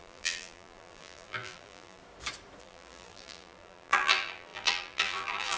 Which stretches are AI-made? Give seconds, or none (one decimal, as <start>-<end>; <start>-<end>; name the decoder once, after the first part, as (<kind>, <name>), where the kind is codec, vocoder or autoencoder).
0.0-2.0 (vocoder, BigVGAN v2); 2.6-5.6